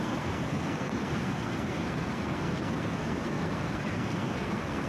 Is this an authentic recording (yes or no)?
no